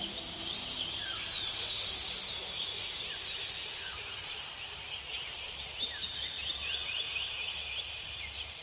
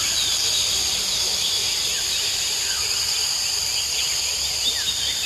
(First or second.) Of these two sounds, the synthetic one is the first